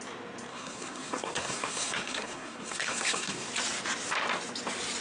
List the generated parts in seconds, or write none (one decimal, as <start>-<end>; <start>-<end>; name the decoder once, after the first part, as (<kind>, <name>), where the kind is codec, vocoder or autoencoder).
0.5-3.5 (codec, SNAC)